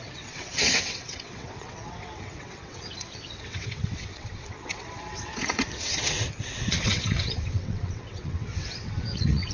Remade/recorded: remade